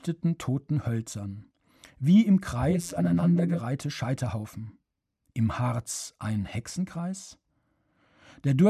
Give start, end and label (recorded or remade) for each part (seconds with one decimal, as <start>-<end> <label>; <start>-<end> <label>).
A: 0.0-2.7 recorded; 2.7-3.6 remade; 3.6-8.7 recorded